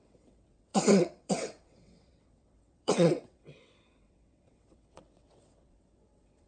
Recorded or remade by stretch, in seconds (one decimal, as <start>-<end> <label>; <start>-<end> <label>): 0.0-6.5 remade